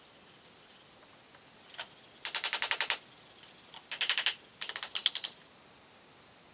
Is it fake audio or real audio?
real